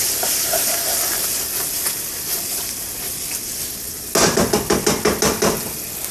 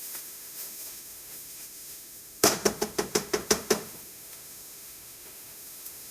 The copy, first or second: second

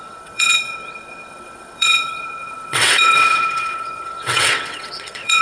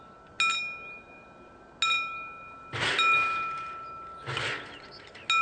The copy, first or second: first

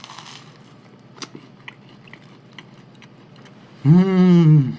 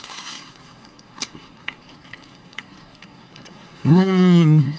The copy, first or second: second